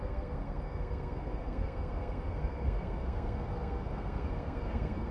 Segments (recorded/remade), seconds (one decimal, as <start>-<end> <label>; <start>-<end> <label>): 0.0-5.1 remade